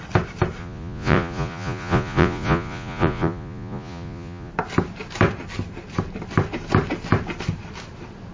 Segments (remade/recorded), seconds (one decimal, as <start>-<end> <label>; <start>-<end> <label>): 0.0-0.6 recorded; 0.6-4.5 remade; 4.5-8.3 recorded